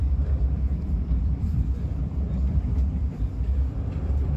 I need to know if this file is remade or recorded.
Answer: remade